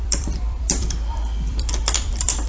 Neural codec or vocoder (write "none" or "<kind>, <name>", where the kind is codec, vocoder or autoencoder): vocoder, BigVGAN v2